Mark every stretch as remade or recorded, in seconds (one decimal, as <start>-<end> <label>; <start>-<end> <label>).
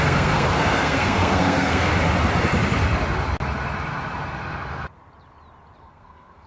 0.0-1.9 remade; 1.9-5.8 recorded; 5.8-6.5 remade